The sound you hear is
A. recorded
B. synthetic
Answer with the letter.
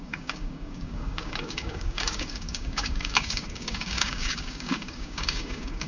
B